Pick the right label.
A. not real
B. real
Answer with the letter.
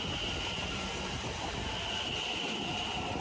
B